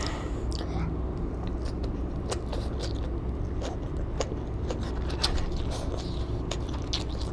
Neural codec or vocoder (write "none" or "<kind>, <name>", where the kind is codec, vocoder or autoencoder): none